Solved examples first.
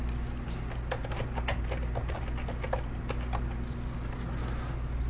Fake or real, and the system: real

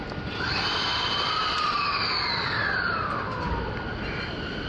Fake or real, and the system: real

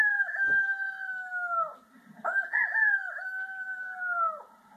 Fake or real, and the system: real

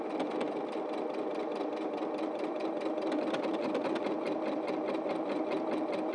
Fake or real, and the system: fake, vocoder, BigVGAN v2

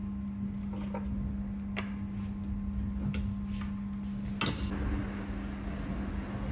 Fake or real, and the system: real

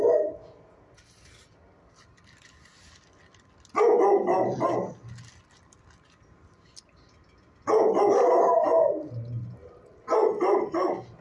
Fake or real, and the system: real